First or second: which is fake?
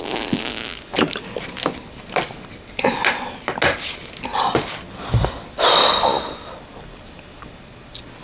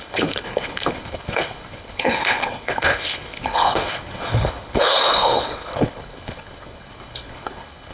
second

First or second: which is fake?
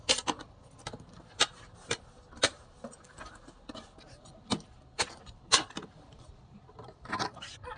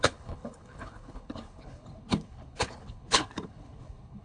second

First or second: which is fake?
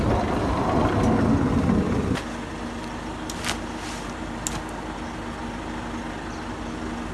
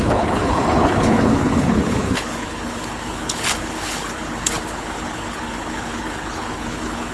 second